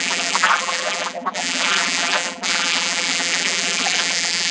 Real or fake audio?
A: fake